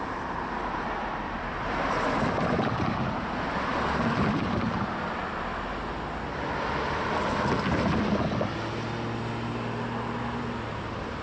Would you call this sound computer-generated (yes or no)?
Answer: no